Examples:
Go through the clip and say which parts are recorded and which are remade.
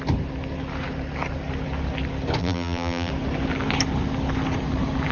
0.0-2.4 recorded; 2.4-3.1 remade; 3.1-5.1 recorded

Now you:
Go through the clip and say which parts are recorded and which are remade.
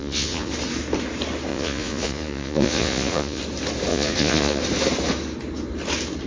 0.0-0.5 remade; 0.5-1.5 recorded; 1.5-3.4 remade; 3.4-3.9 recorded; 3.9-4.6 remade; 4.6-6.3 recorded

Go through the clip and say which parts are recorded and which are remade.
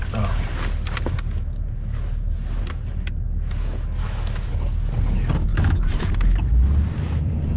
0.0-4.0 recorded; 4.0-4.6 remade; 4.6-7.6 recorded